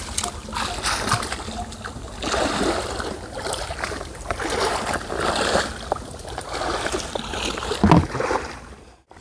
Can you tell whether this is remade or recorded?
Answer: recorded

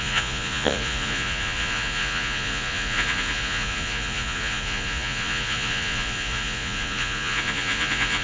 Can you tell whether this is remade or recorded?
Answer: remade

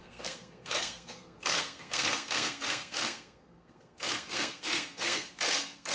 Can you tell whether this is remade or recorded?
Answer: remade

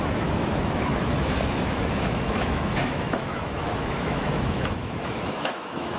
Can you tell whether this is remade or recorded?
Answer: remade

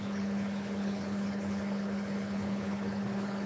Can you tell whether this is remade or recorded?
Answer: remade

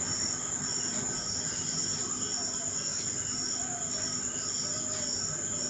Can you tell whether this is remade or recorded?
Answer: recorded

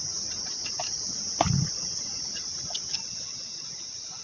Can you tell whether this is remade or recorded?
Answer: recorded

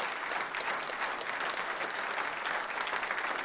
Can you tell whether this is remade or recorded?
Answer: recorded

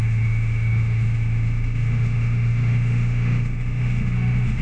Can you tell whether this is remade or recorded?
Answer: remade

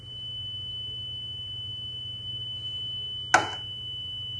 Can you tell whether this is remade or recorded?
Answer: recorded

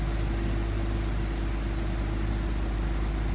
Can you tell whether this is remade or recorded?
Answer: recorded